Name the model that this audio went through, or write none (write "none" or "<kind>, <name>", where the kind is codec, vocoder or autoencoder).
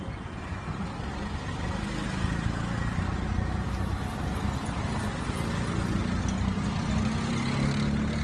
none